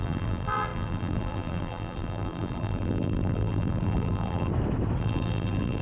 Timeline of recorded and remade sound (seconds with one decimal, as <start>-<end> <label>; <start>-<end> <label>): 0.0-4.5 remade; 4.5-5.0 recorded; 5.0-5.8 remade